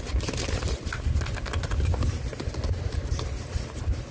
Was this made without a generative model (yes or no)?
yes